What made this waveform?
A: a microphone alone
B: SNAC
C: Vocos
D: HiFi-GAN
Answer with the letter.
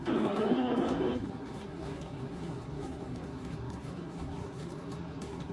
B